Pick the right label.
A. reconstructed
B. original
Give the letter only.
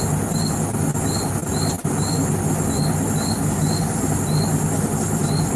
B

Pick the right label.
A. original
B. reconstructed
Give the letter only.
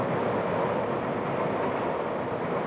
A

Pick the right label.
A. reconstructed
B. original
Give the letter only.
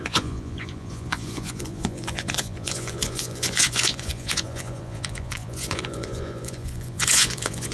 A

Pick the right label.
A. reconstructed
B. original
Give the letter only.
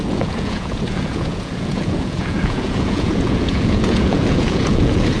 A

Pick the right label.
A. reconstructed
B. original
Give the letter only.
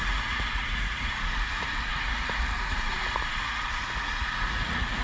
A